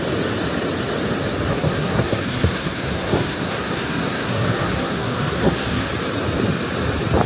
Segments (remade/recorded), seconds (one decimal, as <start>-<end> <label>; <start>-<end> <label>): 0.0-1.5 recorded; 1.5-5.9 remade; 5.9-7.3 recorded